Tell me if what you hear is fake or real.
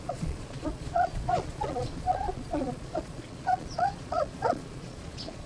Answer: fake